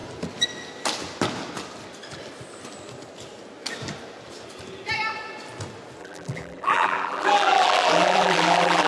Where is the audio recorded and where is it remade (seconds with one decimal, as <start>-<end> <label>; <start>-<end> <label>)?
0.0-6.0 recorded; 6.0-8.9 remade